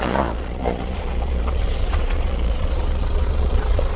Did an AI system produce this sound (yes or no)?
yes